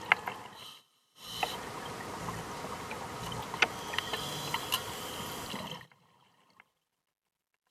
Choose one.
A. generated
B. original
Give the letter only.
B